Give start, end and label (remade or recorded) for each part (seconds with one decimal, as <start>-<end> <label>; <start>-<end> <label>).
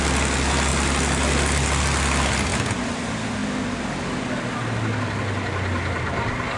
0.0-6.6 recorded